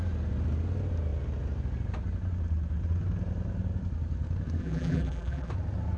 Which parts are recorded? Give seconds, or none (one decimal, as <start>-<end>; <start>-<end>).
0.0-4.6; 5.5-6.0